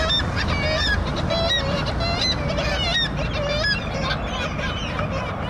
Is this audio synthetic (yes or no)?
no